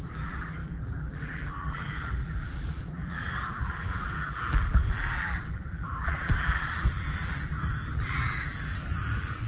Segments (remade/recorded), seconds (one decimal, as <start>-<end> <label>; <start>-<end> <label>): 0.0-9.5 remade